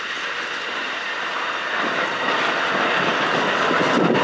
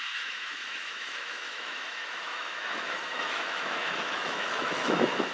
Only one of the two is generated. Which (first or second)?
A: second